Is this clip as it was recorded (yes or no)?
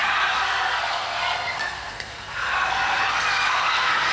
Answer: no